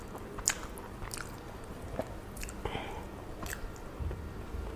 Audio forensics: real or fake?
real